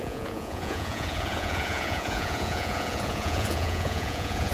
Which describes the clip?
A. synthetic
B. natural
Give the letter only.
A